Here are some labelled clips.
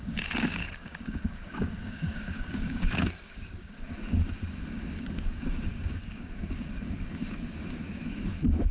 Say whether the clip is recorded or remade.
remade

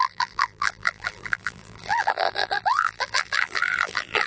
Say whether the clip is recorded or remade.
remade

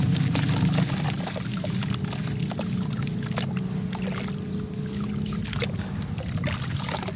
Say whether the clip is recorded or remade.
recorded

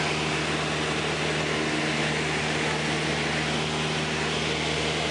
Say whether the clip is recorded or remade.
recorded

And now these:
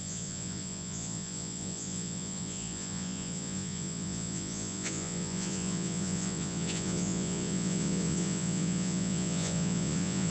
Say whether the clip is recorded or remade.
remade